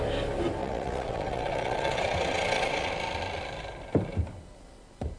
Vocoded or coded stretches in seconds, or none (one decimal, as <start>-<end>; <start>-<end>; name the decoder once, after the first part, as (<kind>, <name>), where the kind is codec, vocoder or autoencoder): 0.6-2.9 (vocoder, WaveNeXt)